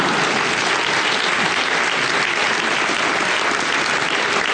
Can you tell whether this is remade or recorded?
recorded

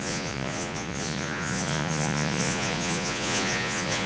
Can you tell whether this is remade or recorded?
remade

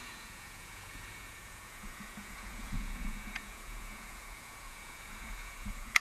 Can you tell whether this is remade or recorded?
remade